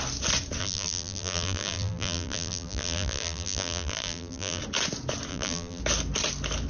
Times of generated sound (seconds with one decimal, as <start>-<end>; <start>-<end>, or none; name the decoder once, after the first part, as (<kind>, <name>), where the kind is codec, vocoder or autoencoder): 0.6-4.6 (vocoder, BigVGAN v2); 5.3-5.8